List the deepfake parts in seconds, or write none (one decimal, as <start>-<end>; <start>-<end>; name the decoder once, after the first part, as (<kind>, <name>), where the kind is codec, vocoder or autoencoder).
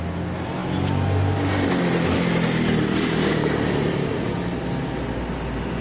none